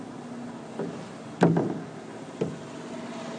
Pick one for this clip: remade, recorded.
recorded